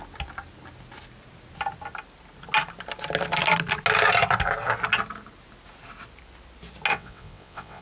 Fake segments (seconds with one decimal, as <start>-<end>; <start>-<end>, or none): 6.9-7.8